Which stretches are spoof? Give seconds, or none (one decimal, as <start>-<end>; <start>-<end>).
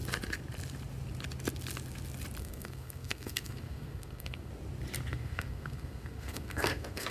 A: 2.4-4.5; 5.1-7.1